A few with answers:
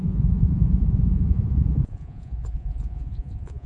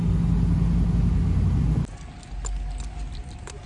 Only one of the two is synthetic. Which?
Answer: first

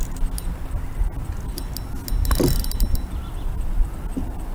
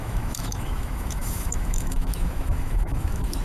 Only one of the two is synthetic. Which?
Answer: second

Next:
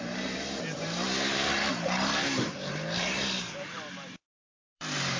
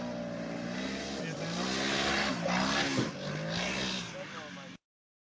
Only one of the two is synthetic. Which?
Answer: first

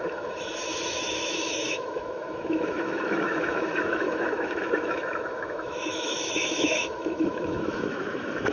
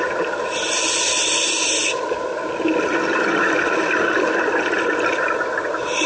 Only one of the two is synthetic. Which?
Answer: first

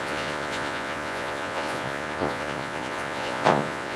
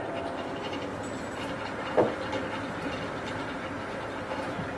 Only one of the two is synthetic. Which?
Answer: first